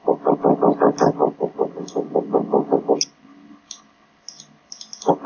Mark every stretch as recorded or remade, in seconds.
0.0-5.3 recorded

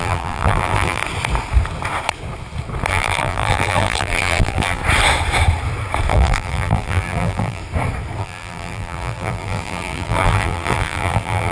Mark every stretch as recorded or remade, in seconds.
0.0-1.0 remade; 1.0-2.9 recorded; 2.9-4.8 remade; 4.8-6.1 recorded; 6.1-7.6 remade; 7.6-8.2 recorded; 8.2-11.5 remade

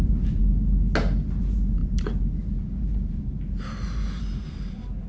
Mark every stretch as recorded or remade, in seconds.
0.0-0.4 remade; 0.4-1.4 recorded; 1.4-5.1 remade